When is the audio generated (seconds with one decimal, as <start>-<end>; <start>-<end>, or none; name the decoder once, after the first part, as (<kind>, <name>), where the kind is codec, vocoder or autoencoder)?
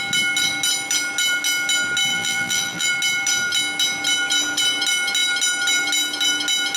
2.1-2.9 (vocoder, BigVGAN v2)